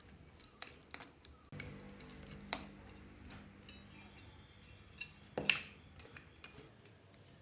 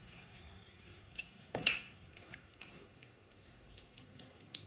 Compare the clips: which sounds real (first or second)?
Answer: first